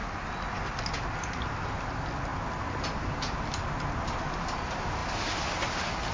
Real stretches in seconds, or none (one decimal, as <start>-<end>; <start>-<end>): 0.0-6.1